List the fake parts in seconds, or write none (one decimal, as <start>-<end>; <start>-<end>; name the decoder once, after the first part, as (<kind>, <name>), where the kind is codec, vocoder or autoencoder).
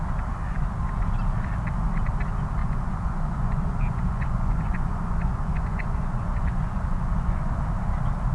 2.6-7.5 (vocoder, Vocos)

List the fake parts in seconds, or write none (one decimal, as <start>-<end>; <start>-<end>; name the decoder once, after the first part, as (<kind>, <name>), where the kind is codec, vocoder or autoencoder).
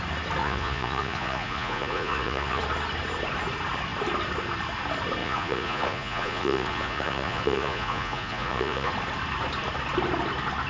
0.4-2.6 (vocoder, Vocos); 5.2-8.9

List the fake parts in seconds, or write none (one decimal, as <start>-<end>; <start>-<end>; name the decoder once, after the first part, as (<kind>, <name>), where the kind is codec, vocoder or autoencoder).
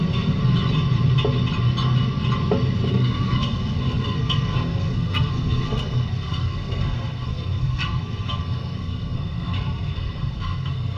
0.0-0.4 (codec, SNAC); 2.9-11.0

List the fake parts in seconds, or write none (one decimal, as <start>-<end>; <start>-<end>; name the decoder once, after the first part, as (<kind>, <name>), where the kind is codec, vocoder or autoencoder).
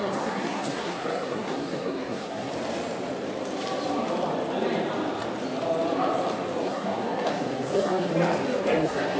0.0-2.5 (codec, SNAC); 6.6-8.1; 8.6-9.2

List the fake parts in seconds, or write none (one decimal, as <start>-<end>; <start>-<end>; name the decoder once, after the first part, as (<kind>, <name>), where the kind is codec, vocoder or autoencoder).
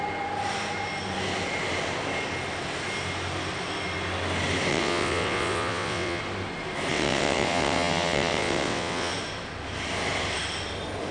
4.7-6.2 (vocoder, WaveNeXt); 6.9-9.1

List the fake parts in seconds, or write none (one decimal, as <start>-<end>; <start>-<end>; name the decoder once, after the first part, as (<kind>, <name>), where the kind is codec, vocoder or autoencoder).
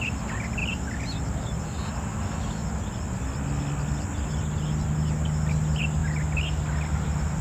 none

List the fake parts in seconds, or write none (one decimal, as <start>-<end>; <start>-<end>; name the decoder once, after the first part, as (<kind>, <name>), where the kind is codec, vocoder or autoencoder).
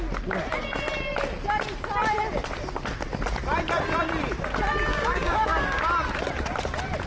4.9-5.8 (codec, DAC)